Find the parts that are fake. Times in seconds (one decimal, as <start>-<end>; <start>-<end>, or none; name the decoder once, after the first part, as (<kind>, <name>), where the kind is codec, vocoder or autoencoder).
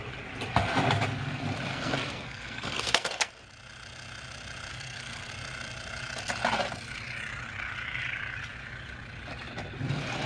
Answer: 1.7-3.3 (codec, SNAC); 4.7-5.3